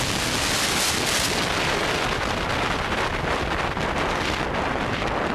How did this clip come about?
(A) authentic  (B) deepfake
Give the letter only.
A